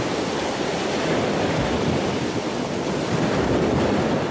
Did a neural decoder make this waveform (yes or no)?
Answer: no